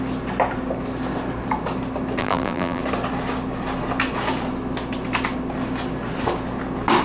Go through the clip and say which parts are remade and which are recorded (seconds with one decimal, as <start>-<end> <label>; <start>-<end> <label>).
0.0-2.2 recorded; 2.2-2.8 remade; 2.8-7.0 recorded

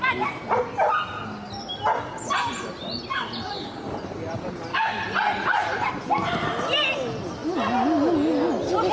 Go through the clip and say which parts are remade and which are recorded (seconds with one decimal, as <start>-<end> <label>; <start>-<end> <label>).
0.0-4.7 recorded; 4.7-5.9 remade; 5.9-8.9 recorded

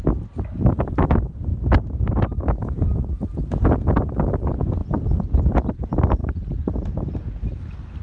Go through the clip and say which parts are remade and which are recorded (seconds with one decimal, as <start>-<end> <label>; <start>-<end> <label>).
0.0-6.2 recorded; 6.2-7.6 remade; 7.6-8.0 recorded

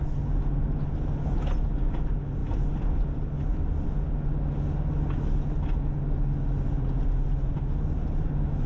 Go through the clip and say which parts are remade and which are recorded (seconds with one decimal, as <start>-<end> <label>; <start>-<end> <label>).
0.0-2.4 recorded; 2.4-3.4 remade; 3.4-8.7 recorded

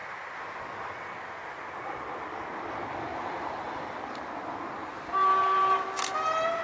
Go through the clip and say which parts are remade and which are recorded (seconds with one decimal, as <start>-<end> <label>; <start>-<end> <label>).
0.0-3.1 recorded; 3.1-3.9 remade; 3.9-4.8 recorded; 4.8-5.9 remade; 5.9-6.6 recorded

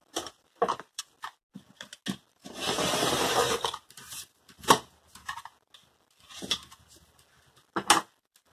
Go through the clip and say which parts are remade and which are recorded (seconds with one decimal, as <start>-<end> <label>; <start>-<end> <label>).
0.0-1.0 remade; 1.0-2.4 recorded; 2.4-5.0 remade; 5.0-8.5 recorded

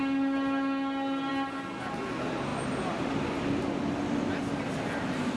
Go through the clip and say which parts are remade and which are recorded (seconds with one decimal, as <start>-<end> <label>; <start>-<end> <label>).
0.0-5.4 recorded

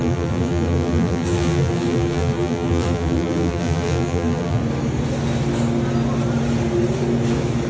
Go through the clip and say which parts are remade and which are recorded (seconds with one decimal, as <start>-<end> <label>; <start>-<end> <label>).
0.0-4.6 remade; 4.6-7.7 recorded